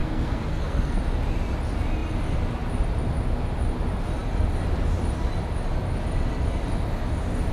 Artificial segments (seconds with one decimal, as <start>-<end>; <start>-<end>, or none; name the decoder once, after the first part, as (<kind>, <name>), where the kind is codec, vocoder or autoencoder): 0.0-1.0 (codec, SNAC)